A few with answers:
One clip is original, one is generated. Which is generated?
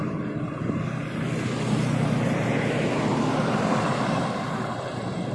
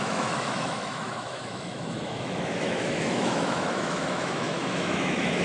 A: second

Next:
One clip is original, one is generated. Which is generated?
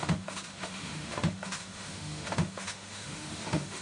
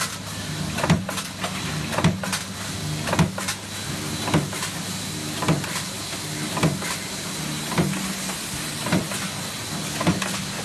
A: first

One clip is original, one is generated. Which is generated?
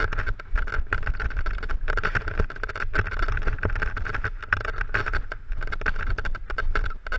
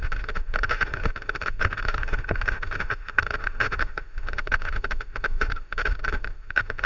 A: second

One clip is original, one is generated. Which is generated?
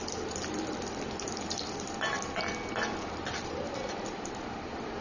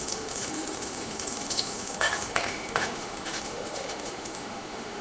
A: second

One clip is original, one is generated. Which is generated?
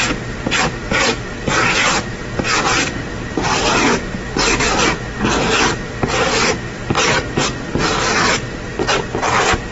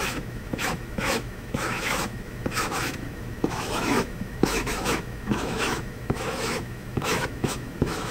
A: second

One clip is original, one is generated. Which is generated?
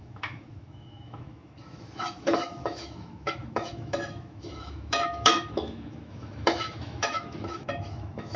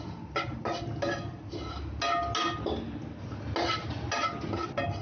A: first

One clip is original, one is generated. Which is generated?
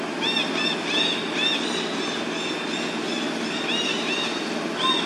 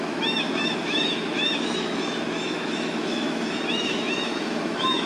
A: second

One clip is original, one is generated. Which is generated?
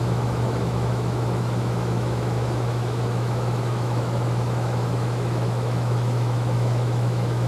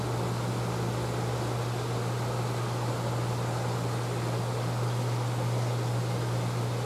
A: first